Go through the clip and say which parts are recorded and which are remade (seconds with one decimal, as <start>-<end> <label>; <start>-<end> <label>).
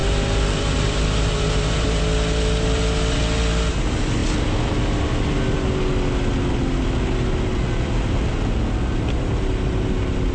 0.0-2.0 remade; 2.0-10.3 recorded